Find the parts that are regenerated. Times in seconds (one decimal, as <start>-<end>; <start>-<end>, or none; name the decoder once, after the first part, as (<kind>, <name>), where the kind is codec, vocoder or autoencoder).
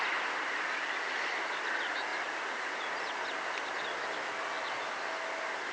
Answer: none